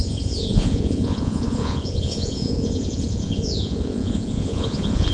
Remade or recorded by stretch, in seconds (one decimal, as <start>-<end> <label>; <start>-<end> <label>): 0.0-5.1 remade